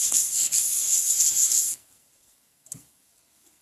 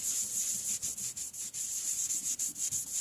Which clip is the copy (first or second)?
first